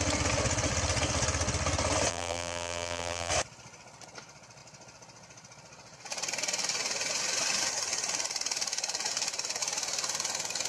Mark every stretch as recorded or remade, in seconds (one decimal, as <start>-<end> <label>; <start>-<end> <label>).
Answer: 0.0-2.1 recorded; 2.1-3.3 remade; 3.3-10.7 recorded